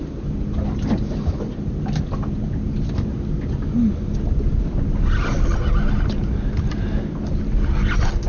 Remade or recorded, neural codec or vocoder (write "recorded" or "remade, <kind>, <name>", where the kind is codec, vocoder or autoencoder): recorded